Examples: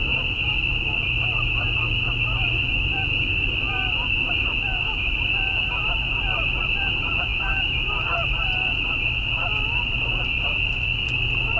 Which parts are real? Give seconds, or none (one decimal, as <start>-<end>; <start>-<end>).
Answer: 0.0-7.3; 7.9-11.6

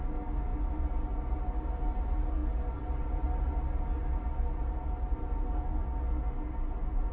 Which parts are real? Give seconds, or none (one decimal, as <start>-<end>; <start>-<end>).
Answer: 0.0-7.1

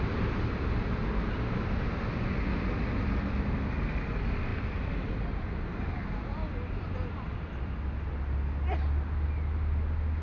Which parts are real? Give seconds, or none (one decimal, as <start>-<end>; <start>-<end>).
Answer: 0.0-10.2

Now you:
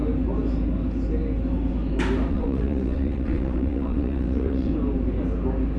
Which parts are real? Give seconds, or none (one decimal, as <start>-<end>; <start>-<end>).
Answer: 0.0-2.3; 4.7-5.8

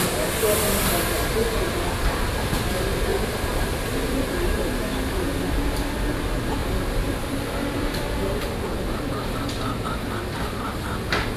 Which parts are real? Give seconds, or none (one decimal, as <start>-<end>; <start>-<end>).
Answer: 0.0-3.1; 4.9-6.6; 10.6-11.4

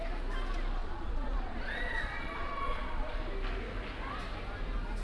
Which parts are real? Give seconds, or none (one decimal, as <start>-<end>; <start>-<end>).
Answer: 0.0-0.8; 3.2-5.0

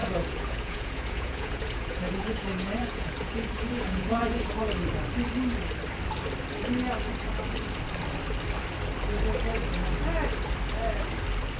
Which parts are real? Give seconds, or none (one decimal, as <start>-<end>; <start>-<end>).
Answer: 4.5-11.6

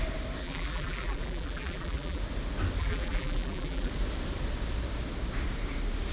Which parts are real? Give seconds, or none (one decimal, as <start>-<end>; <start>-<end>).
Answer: 0.0-0.4; 2.2-2.8; 3.9-6.1